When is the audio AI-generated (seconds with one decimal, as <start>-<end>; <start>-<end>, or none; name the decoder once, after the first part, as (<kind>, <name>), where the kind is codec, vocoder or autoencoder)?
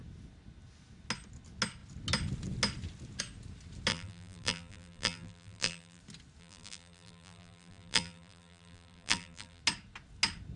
3.9-6.0 (vocoder, BigVGAN v2); 6.4-9.6